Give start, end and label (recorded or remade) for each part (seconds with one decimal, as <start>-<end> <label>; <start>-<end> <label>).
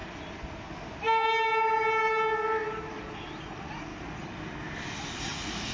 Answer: 0.0-3.4 recorded; 3.4-3.9 remade; 3.9-5.2 recorded; 5.2-5.7 remade